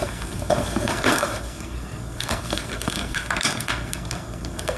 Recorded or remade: remade